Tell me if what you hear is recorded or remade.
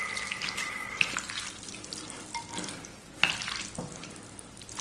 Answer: recorded